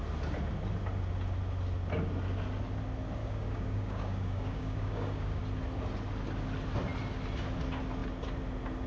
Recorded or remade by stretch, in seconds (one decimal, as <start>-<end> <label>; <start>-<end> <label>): 0.0-3.2 recorded; 3.2-5.4 remade; 5.4-8.9 recorded